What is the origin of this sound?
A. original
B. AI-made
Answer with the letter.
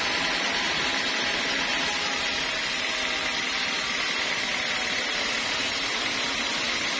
A